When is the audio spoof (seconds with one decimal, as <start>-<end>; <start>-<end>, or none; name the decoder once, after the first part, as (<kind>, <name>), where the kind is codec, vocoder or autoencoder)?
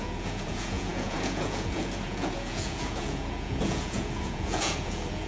0.0-5.3 (vocoder, Vocos)